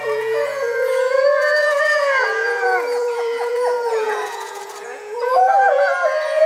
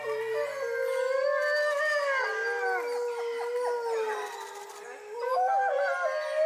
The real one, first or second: second